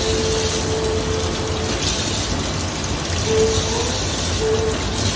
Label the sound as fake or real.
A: real